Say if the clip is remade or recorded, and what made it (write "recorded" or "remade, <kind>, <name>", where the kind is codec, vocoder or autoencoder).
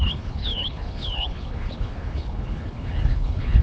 remade, codec, HILCodec